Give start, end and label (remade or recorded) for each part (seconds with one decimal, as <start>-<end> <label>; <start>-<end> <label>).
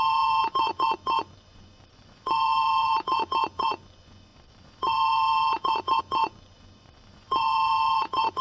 0.0-8.4 remade